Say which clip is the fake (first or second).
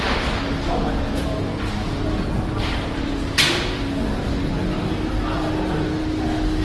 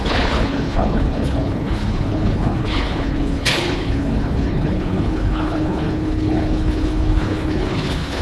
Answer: second